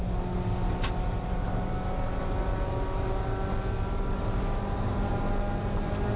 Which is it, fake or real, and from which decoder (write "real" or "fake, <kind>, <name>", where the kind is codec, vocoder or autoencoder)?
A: real